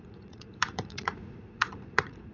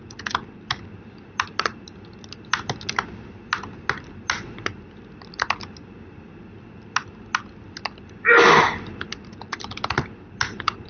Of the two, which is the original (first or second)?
second